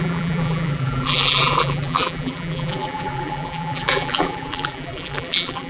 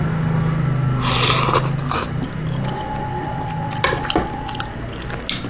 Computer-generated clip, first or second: first